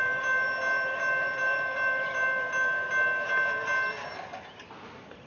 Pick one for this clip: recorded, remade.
recorded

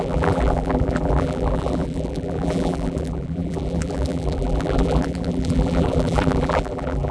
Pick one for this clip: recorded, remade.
remade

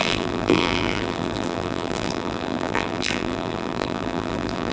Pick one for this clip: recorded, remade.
remade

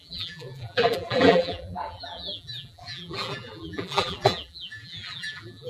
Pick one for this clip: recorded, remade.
remade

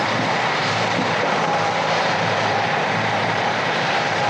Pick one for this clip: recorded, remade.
remade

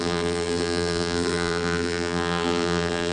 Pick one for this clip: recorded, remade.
remade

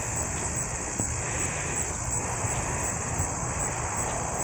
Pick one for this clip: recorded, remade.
recorded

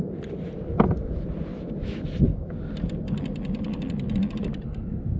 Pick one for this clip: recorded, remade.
recorded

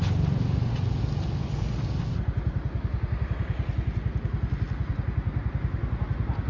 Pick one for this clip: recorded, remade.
recorded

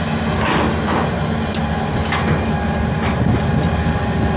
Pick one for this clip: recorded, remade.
recorded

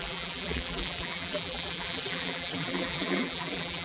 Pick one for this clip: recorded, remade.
remade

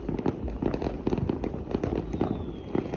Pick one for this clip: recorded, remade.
recorded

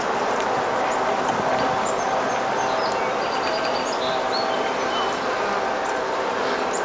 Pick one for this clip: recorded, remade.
recorded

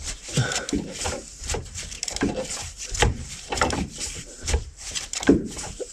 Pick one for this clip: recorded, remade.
remade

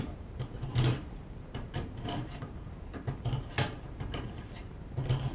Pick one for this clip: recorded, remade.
remade